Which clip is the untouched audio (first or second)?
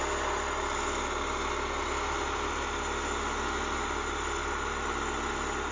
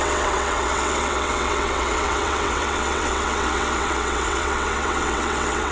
first